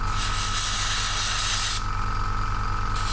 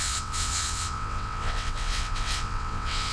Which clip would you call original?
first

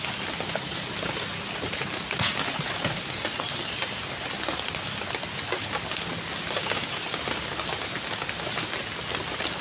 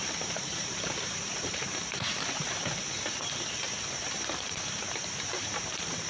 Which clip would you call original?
first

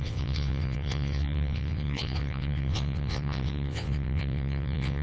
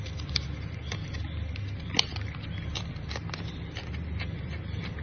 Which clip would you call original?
second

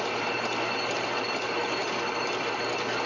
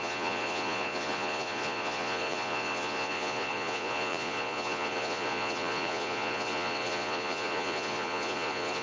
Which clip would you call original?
first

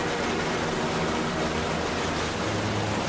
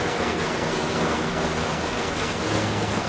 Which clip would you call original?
first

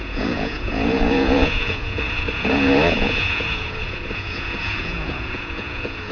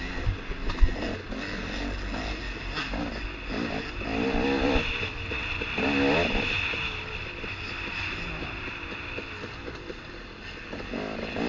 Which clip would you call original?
second